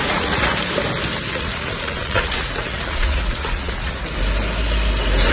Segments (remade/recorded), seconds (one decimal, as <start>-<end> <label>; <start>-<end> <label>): 0.0-0.5 remade; 0.5-1.3 recorded; 1.3-4.0 remade; 4.0-5.3 recorded